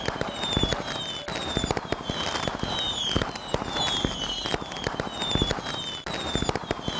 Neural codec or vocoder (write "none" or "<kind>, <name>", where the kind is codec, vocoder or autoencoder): none